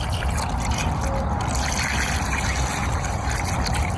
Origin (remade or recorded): recorded